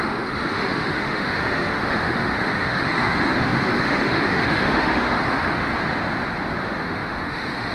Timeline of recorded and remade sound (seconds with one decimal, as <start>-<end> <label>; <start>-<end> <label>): 0.0-5.7 remade; 5.7-6.6 recorded; 6.6-7.7 remade